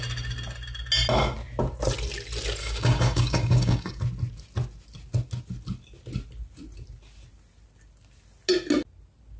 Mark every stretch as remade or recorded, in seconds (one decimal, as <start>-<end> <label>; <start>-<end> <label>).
0.0-2.6 recorded; 2.6-4.0 remade; 4.0-9.4 recorded